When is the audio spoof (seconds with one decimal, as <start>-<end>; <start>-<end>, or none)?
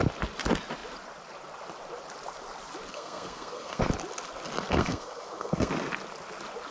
2.9-3.8; 4.7-5.7